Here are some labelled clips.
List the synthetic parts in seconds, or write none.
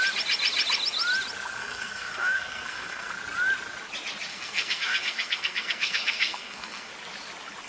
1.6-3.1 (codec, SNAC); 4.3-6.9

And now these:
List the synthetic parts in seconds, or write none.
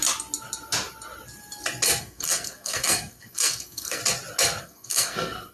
2.0-4.0 (codec, SNAC); 4.6-5.5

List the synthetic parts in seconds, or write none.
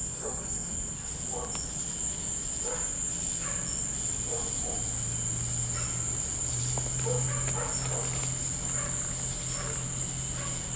0.0-1.1 (codec, SNAC)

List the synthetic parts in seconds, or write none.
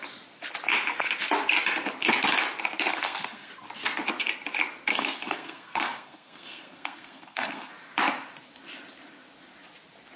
2.9-3.5 (codec, SNAC); 4.9-7.7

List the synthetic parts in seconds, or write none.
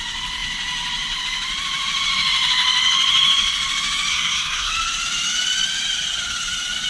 4.1-4.7 (codec, SNAC)